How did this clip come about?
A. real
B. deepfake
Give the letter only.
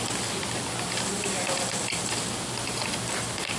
A